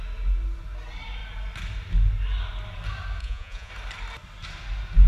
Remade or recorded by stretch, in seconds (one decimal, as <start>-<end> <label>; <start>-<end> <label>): 0.0-3.2 recorded; 3.2-3.7 remade; 3.7-5.1 recorded